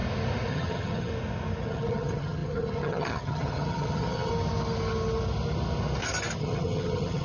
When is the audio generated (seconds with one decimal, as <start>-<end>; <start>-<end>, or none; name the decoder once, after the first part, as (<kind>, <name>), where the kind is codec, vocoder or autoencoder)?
0.5-1.1 (vocoder, HiFi-GAN); 1.6-4.3; 6.4-7.2